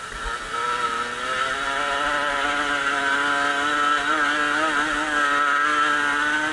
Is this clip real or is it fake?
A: real